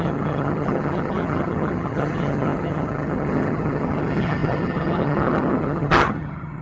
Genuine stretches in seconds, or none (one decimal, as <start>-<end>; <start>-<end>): none